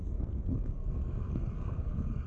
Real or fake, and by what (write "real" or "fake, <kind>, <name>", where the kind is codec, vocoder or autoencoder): fake, codec, SNAC